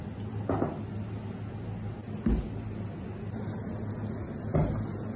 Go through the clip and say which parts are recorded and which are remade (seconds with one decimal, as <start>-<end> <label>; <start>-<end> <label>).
0.0-5.2 recorded